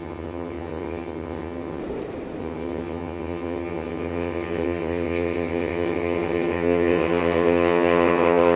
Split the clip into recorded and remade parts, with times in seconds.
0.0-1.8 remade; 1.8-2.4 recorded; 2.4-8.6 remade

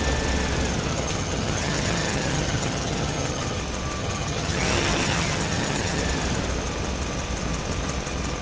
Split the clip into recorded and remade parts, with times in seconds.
0.0-0.9 recorded; 0.9-3.6 remade; 3.6-4.0 recorded; 4.0-6.0 remade; 6.0-8.4 recorded

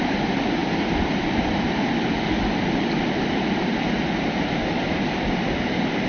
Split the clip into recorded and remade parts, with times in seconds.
0.0-6.1 recorded